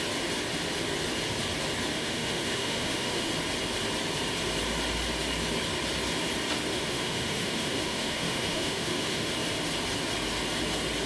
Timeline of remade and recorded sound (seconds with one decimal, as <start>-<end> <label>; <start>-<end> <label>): 0.0-1.9 recorded; 1.9-3.3 remade; 3.3-6.7 recorded; 6.7-9.3 remade; 9.3-11.1 recorded

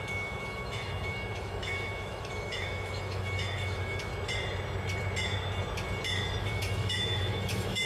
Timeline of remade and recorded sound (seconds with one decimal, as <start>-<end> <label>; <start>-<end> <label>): 0.0-4.1 remade; 4.1-6.4 recorded; 6.4-7.9 remade